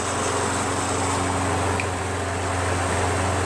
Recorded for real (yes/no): yes